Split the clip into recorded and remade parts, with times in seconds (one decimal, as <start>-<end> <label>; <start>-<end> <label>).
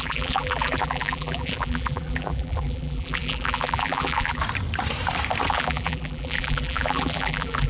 0.0-4.4 remade; 4.4-5.5 recorded; 5.5-7.7 remade